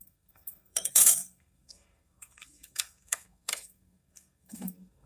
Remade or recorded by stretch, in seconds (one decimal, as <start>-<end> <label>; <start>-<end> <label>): 0.0-5.1 remade